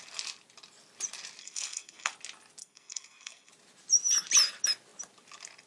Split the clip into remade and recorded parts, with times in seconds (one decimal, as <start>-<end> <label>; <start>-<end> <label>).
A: 0.0-1.4 recorded; 1.4-2.1 remade; 2.1-2.6 recorded; 2.6-3.5 remade; 3.5-5.7 recorded